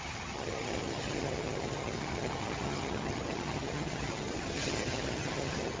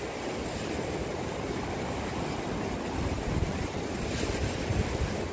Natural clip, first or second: second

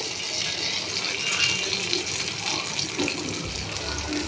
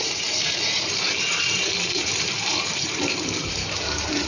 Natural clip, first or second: first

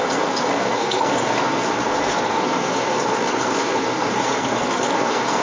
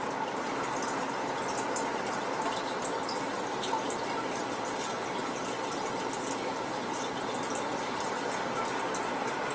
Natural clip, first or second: second